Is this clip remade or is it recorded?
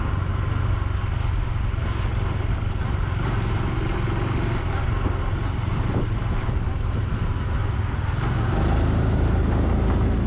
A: recorded